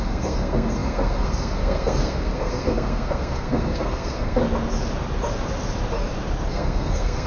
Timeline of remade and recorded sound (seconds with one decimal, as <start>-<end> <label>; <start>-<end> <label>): 0.0-4.4 remade; 4.4-6.5 recorded; 6.5-7.3 remade